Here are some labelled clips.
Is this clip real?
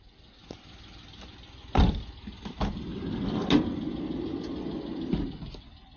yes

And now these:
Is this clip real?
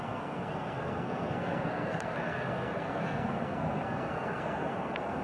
no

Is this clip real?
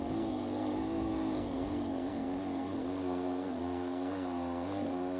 no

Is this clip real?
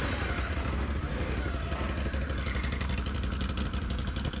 yes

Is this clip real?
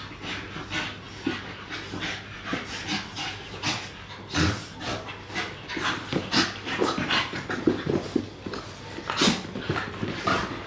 yes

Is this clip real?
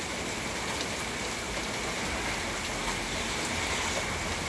yes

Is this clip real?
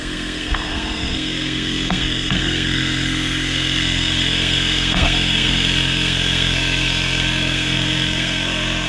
no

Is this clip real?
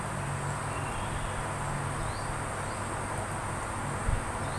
yes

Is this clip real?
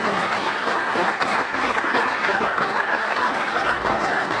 no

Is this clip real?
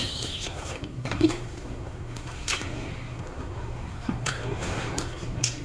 no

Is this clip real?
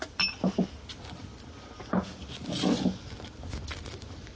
yes